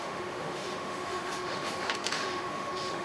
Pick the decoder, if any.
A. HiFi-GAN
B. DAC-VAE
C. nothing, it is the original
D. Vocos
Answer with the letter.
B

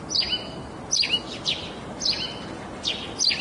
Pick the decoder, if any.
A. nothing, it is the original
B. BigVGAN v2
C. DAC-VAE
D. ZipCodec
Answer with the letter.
A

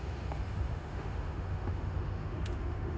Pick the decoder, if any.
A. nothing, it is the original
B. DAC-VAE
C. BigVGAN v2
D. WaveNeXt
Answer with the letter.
B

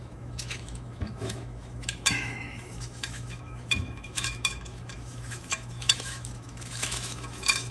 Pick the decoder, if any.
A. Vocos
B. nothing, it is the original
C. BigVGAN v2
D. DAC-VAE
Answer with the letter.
D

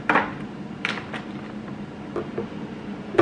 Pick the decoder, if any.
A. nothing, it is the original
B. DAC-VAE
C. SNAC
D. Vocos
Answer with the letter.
A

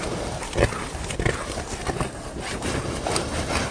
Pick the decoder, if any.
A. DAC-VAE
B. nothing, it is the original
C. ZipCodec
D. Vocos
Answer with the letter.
B